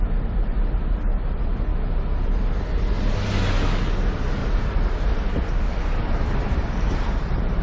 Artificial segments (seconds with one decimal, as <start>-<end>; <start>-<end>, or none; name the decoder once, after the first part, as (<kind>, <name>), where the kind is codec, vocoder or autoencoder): 4.4-7.6 (vocoder, BigVGAN v2)